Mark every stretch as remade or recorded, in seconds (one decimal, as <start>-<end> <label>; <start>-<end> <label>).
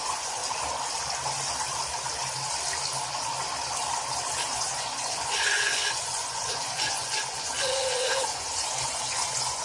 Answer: 0.0-0.4 remade; 0.4-4.5 recorded; 4.5-9.6 remade